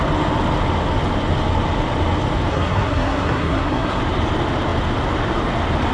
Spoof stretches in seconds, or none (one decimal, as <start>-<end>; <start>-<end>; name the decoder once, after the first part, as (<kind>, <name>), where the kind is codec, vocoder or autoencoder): 2.5-4.0 (codec, SNAC)